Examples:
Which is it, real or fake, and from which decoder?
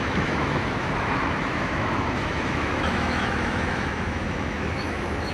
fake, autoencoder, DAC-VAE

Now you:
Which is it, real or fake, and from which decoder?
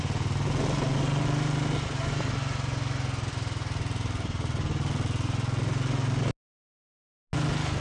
real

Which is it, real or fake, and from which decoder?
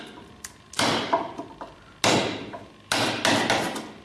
real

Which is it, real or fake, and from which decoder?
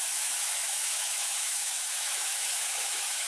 fake, autoencoder, DAC-VAE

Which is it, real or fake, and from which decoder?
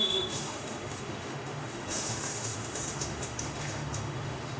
fake, autoencoder, DAC-VAE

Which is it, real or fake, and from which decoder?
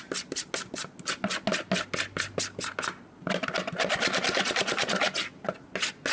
real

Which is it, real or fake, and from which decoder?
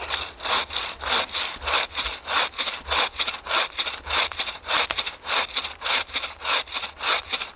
real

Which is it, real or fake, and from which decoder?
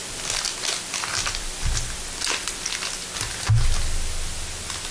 real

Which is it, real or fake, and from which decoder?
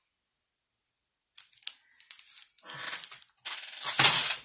real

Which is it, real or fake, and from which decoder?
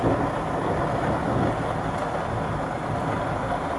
real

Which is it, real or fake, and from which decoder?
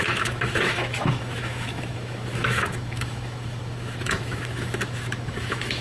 fake, autoencoder, DAC-VAE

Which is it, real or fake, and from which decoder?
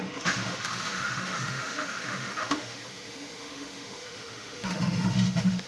fake, autoencoder, DAC-VAE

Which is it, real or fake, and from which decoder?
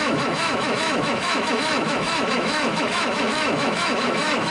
fake, autoencoder, DAC-VAE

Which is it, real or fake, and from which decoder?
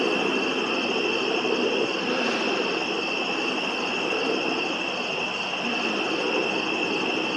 real